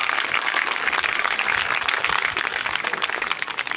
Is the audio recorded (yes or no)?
no